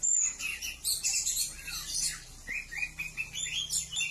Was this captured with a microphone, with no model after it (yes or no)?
yes